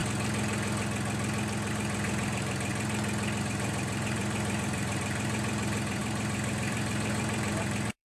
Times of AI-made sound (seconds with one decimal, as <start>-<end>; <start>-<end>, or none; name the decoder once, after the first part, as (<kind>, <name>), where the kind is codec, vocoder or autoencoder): 1.7-2.7 (vocoder, BigVGAN v2); 3.4-8.1